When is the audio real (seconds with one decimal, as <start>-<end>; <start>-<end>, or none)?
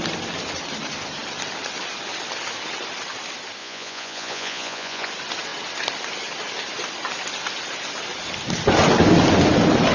0.0-3.6; 5.1-9.9